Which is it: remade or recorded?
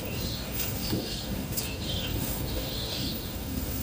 remade